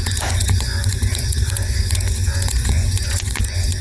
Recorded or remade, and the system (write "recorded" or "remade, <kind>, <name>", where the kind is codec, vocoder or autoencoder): remade, vocoder, Vocos